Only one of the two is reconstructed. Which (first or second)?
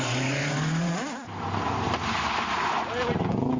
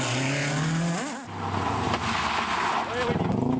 first